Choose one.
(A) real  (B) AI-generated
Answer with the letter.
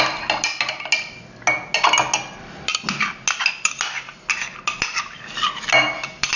A